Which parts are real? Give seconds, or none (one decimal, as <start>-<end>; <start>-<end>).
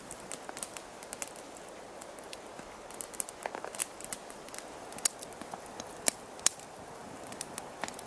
0.0-8.1